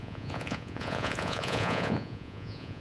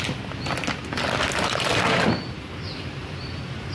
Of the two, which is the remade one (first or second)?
first